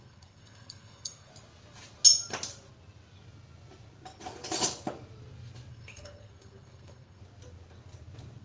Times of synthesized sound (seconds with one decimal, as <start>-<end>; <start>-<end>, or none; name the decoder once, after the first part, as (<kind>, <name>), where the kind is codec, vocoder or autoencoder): 0.0-1.3 (codec, SNAC); 5.7-7.2